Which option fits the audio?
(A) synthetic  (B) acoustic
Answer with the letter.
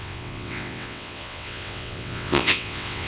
A